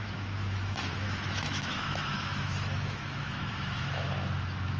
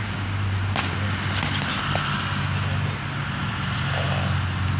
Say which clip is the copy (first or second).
first